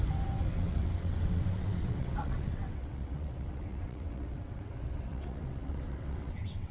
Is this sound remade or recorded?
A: remade